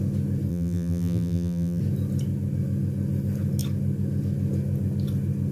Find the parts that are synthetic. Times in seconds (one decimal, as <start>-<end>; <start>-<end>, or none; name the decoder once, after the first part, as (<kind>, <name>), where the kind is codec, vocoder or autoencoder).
0.5-1.8 (vocoder, BigVGAN v2)